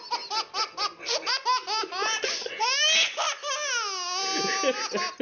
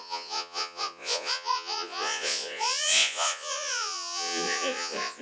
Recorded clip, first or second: first